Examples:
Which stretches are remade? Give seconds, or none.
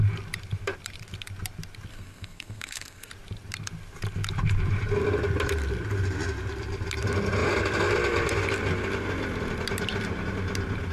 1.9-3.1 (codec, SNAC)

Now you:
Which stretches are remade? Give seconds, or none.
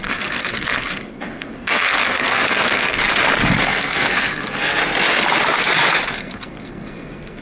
0.0-3.0 (codec, SNAC); 3.6-4.8; 6.1-7.4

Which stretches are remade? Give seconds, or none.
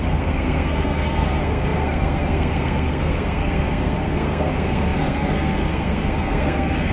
0.0-6.9 (codec, SNAC)